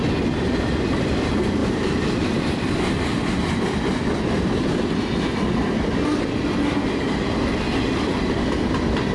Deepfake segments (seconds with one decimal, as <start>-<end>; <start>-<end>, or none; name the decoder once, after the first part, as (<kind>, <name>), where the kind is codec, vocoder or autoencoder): 1.6-2.7 (vocoder, BigVGAN v2); 3.1-5.5